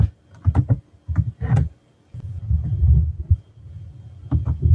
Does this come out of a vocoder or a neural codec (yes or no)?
no